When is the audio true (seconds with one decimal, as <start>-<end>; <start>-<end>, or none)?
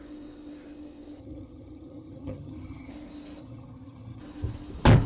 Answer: 0.0-1.2; 2.9-3.4; 4.2-5.1